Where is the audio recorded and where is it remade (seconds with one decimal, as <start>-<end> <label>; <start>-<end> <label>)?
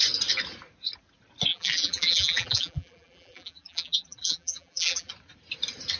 0.0-1.5 recorded; 1.5-5.1 remade; 5.1-6.0 recorded